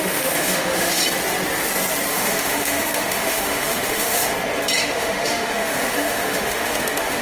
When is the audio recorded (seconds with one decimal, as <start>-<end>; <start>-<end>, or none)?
1.0-2.1; 4.3-4.8